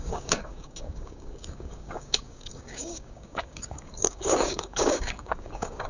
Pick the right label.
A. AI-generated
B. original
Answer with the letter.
A